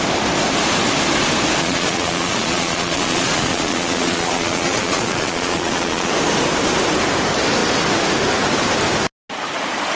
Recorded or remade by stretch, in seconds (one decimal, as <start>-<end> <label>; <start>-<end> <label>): 0.0-1.6 recorded; 1.6-6.1 remade; 6.1-10.0 recorded